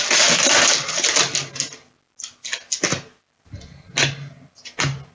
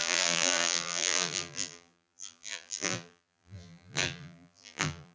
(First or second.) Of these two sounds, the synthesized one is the second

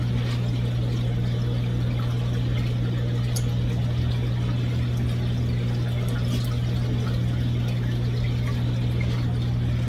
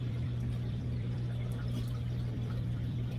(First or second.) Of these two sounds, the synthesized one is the second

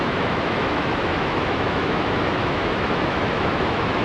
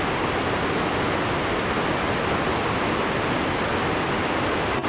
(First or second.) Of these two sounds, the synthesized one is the first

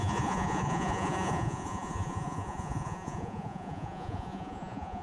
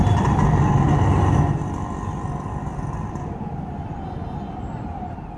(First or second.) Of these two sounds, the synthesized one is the first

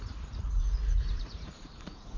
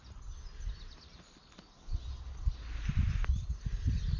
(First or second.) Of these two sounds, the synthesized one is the first